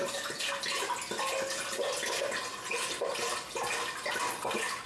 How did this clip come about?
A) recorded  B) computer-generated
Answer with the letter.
A